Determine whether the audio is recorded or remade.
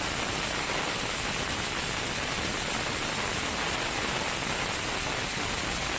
recorded